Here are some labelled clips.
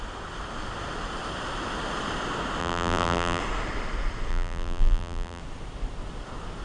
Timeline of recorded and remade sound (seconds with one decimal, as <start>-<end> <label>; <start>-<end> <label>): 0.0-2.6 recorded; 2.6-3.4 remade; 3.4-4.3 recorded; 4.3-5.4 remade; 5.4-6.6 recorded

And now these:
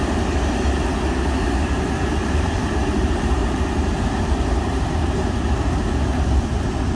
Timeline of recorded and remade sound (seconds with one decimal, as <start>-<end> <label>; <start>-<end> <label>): 0.0-2.2 recorded; 2.2-5.4 remade; 5.4-6.9 recorded

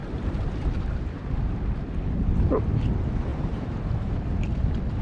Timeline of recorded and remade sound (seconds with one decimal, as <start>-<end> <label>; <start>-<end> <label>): 0.0-1.4 remade; 1.4-3.3 recorded; 3.3-4.1 remade; 4.1-5.0 recorded

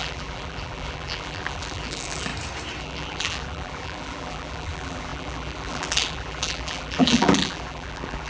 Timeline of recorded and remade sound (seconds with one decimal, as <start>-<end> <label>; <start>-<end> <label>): 0.0-2.3 remade; 2.3-2.8 recorded; 2.8-8.3 remade